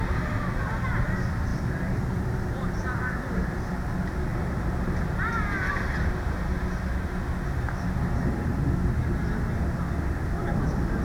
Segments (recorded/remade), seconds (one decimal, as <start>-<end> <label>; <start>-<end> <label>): 0.0-1.5 recorded; 1.5-3.9 remade; 3.9-4.3 recorded; 4.3-5.3 remade; 5.3-11.0 recorded